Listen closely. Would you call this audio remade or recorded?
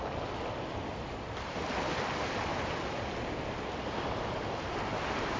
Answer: recorded